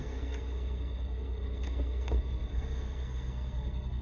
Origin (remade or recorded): remade